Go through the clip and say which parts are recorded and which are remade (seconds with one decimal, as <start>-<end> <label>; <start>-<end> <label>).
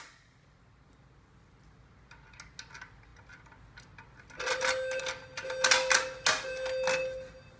0.0-7.6 recorded